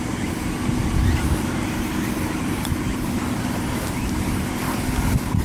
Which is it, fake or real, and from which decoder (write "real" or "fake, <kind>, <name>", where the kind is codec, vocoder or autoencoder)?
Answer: real